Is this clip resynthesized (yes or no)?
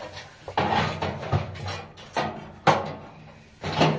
no